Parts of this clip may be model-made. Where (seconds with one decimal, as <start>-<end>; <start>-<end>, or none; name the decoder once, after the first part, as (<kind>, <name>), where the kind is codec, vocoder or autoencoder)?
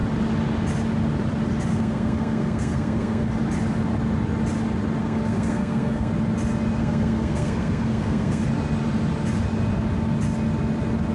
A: 1.7-3.3 (codec, SNAC); 5.0-6.1; 6.8-8.4